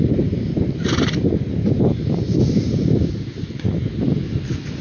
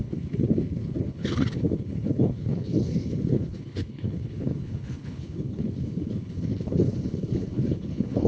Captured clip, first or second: first